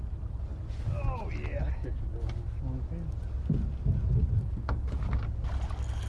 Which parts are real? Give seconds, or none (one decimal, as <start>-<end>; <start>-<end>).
0.0-6.1